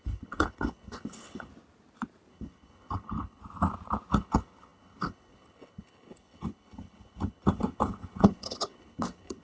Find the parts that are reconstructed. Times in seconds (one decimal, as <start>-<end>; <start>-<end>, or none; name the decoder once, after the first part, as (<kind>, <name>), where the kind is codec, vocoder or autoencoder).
0.0-1.5 (codec, HILCodec); 2.3-3.4; 4.1-9.4